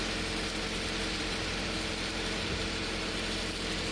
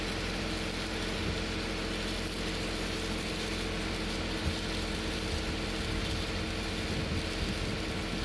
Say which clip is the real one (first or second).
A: second